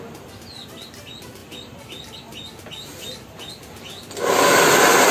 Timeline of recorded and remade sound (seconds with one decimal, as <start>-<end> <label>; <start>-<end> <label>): 0.0-5.1 recorded